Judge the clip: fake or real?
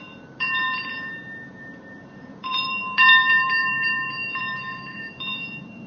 fake